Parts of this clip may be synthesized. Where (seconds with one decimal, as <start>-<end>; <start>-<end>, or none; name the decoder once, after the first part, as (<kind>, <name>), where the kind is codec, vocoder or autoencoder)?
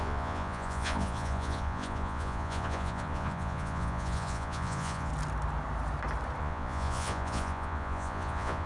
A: 0.0-5.1 (vocoder, Vocos); 6.4-8.7